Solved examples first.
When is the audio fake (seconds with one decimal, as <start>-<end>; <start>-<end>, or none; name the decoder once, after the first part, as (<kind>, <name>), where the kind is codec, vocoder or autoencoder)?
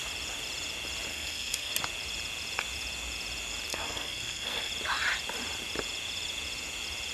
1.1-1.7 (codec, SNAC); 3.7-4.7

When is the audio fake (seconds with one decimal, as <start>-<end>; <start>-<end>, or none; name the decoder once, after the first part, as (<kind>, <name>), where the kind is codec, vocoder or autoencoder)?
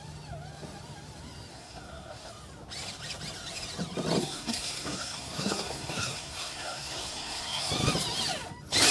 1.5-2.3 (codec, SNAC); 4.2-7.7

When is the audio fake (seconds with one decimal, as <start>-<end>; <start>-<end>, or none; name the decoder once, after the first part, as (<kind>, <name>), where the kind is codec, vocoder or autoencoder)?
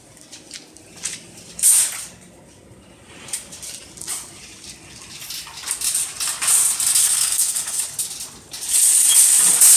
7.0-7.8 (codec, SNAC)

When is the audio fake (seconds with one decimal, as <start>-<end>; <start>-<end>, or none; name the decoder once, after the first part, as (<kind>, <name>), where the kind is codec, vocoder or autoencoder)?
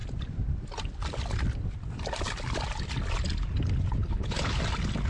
4.0-4.6 (codec, HILCodec)